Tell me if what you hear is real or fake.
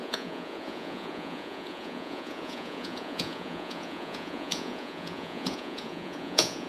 fake